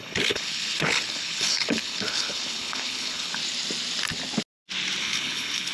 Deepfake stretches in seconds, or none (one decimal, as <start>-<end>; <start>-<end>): 0.0-3.4; 5.0-5.7